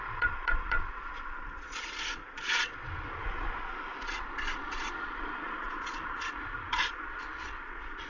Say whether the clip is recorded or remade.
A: remade